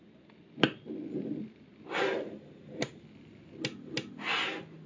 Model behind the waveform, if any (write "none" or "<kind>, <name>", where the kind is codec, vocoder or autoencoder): none